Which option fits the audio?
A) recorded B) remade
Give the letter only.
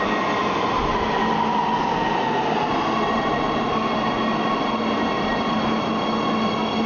A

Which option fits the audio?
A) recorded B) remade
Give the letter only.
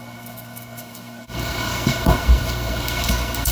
B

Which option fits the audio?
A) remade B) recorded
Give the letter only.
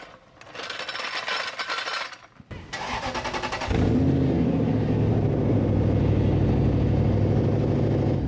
B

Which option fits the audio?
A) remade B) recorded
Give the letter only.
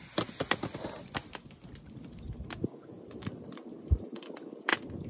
B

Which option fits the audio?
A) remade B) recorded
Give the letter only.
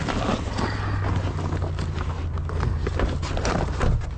B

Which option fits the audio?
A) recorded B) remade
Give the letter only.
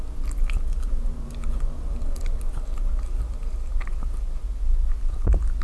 A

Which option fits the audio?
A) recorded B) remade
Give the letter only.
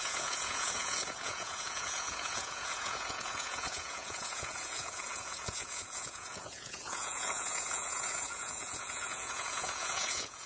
B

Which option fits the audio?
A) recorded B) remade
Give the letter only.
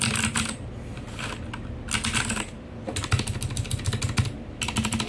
A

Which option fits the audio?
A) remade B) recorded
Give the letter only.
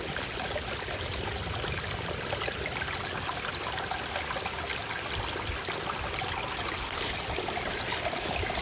B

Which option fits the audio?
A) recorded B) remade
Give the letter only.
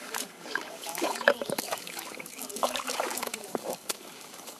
B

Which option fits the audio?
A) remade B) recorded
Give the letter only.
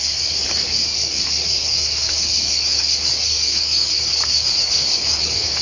A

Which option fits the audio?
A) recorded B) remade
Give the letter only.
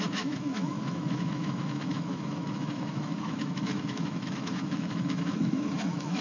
B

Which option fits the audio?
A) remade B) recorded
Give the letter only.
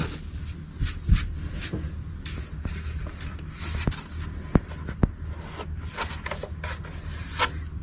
B